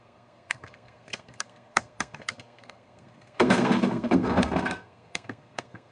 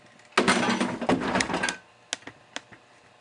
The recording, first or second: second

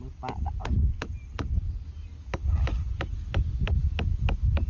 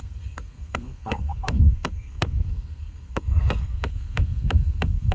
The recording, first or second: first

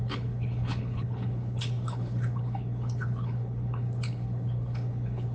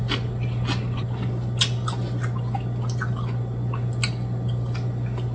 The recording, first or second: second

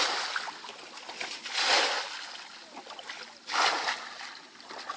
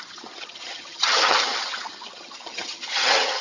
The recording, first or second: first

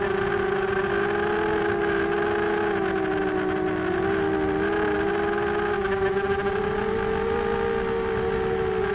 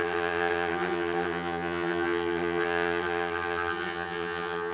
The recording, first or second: first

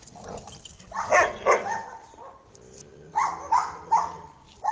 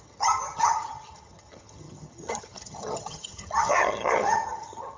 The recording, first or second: first